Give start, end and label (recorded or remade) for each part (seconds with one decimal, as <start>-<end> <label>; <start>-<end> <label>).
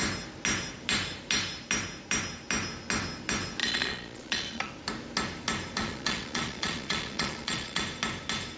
0.0-3.6 recorded; 3.6-4.7 remade; 4.7-5.8 recorded; 5.8-7.8 remade; 7.8-8.6 recorded